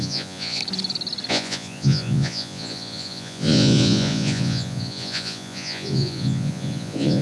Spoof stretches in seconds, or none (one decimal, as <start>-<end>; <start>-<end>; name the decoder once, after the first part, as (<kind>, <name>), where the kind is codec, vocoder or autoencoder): 0.0-0.6 (vocoder, Vocos); 1.3-7.2

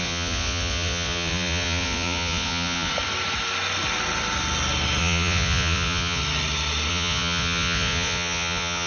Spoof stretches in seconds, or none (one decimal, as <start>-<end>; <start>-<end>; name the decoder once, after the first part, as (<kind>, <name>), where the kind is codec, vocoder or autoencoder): 0.0-2.9 (vocoder, Vocos); 5.0-6.2; 6.9-8.9

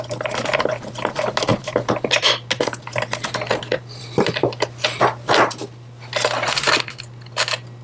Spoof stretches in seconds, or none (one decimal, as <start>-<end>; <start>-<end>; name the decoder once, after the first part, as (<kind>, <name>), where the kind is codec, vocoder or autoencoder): none

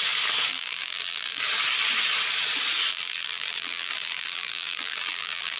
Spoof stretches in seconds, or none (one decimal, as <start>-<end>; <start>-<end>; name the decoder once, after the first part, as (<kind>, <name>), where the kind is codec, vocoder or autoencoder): 0.5-1.4 (vocoder, BigVGAN v2); 2.9-5.6

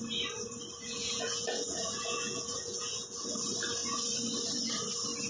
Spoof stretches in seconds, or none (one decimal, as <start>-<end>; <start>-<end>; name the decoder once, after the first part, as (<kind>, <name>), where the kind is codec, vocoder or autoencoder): 0.8-3.3 (vocoder, Vocos)

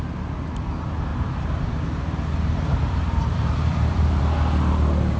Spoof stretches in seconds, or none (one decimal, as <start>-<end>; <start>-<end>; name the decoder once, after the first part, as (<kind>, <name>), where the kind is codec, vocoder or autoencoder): 1.1-4.2 (vocoder, BigVGAN v2)

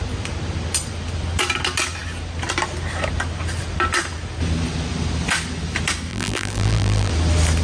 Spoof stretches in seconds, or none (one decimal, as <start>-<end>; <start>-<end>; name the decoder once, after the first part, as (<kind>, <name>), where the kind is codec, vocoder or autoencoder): 6.1-7.1 (vocoder, BigVGAN v2)

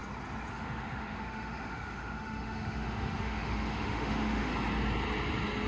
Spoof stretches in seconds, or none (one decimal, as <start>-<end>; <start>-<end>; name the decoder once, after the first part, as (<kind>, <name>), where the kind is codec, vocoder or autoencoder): 0.5-4.5 (autoencoder, DAC-VAE)